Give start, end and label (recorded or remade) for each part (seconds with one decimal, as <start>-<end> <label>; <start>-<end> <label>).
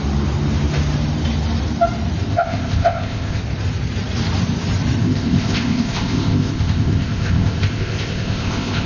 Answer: 0.0-2.3 recorded; 2.3-3.4 remade; 3.4-5.0 recorded; 5.0-8.9 remade